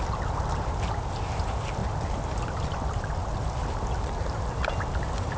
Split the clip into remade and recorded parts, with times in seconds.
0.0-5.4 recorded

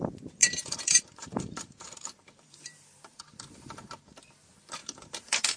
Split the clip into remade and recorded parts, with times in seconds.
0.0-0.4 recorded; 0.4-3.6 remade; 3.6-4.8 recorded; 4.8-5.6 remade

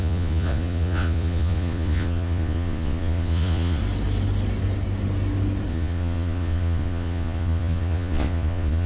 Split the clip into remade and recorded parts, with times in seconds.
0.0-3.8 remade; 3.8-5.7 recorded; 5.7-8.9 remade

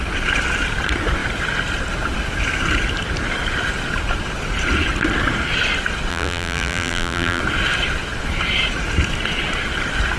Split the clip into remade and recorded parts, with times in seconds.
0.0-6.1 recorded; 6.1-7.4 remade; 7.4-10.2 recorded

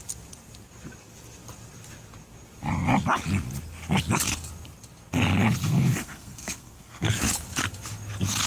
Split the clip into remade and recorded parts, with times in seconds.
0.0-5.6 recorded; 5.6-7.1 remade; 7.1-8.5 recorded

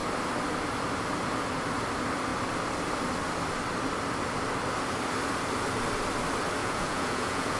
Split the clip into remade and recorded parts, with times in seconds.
0.0-6.6 recorded; 6.6-7.6 remade

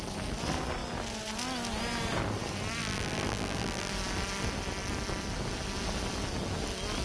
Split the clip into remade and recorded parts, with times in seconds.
0.0-2.8 recorded; 2.8-3.9 remade; 3.9-7.0 recorded